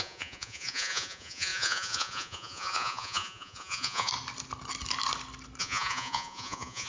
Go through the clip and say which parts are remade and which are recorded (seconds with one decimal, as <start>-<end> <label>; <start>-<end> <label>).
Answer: 0.0-4.1 remade; 4.1-5.6 recorded; 5.6-6.9 remade